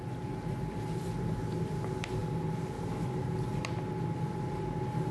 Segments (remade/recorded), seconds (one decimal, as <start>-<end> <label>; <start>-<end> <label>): 0.0-5.1 recorded